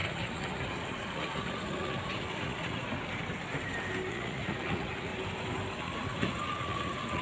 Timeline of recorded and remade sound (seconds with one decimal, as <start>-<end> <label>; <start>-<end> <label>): 0.0-2.9 remade; 2.9-4.1 recorded; 4.1-5.1 remade; 5.1-5.8 recorded; 5.8-7.2 remade